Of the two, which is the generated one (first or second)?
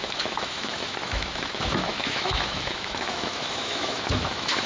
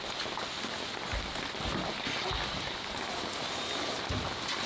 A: first